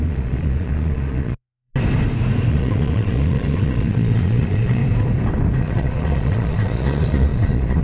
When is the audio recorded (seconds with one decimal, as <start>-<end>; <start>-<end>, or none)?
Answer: 1.7-2.5; 4.8-5.6